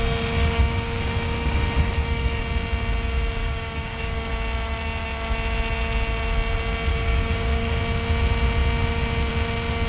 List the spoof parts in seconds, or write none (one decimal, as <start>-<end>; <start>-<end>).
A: 0.4-2.4; 3.4-4.3; 6.9-7.8